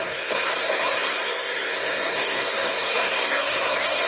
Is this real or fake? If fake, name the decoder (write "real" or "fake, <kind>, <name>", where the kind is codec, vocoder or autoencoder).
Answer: fake, codec, SNAC